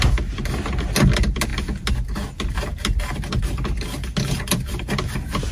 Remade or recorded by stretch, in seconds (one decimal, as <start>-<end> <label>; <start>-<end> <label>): 0.0-5.5 recorded